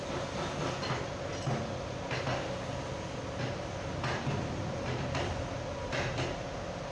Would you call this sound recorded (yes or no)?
yes